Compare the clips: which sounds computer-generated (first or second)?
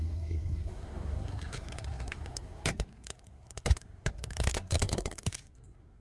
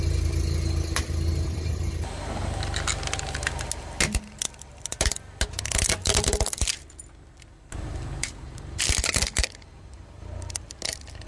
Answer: first